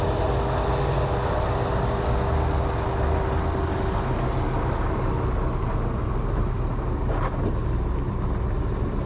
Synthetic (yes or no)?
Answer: no